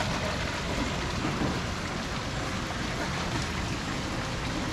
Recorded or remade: recorded